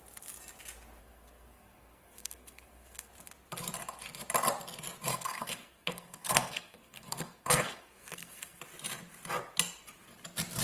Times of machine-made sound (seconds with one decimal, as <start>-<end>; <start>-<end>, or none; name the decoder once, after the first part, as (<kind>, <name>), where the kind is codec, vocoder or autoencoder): 1.0-3.1 (codec, SNAC); 5.1-8.6